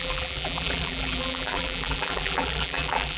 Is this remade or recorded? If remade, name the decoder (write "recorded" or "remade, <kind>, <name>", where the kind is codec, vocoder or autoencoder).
remade, vocoder, BigVGAN v2